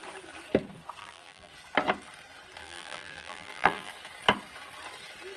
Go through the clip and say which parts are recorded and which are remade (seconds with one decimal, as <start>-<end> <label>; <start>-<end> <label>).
0.0-1.0 recorded; 1.0-1.5 remade; 1.5-2.6 recorded; 2.6-3.9 remade; 3.9-5.4 recorded